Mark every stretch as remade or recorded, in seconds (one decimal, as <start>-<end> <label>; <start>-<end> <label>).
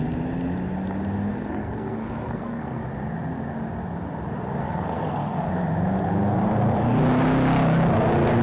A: 0.0-1.3 recorded; 1.3-2.8 remade; 2.8-4.6 recorded; 4.6-5.5 remade; 5.5-8.4 recorded